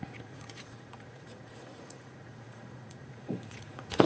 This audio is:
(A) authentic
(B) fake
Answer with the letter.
B